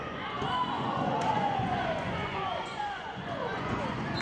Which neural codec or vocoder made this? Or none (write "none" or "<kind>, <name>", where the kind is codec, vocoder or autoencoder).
vocoder, Vocos